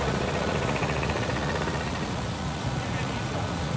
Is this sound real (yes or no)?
no